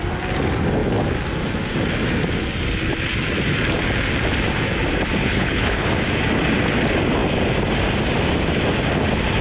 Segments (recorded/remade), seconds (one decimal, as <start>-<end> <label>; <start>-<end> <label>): 0.0-5.2 recorded; 5.2-5.9 remade; 5.9-9.4 recorded